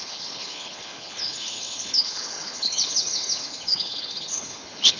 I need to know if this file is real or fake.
fake